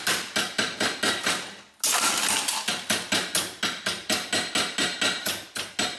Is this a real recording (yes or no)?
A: yes